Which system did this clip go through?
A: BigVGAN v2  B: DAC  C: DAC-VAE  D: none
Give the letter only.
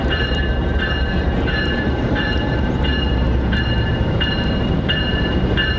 A